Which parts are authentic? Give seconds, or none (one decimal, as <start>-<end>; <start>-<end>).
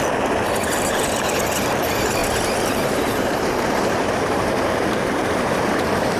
0.0-2.2